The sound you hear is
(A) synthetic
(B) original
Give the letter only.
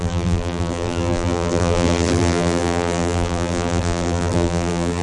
A